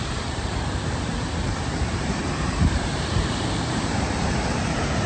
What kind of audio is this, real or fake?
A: fake